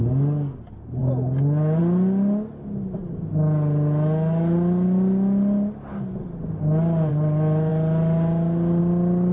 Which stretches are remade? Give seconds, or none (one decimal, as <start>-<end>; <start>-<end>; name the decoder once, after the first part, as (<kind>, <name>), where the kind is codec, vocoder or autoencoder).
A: none